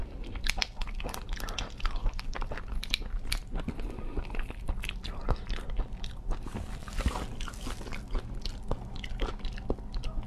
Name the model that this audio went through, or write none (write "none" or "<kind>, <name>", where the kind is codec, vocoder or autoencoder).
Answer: none